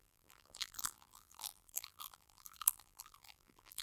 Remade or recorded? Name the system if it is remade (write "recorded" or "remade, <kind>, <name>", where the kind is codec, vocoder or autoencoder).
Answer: remade, vocoder, BigVGAN v2